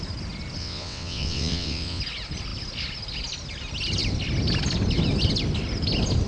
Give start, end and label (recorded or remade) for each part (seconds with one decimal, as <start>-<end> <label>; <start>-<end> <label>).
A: 0.0-0.6 recorded; 0.6-2.0 remade; 2.0-6.3 recorded